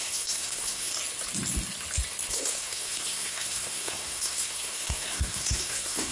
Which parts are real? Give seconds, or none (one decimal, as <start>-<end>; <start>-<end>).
0.9-2.3